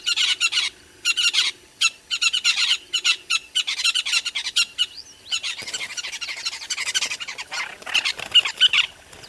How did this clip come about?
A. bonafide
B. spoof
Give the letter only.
A